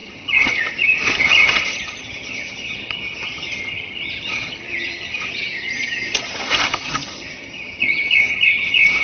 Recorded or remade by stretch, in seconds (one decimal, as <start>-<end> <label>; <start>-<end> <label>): 0.0-9.0 remade